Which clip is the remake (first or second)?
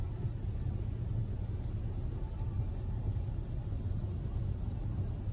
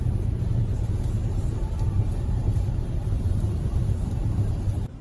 second